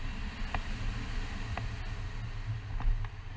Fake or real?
real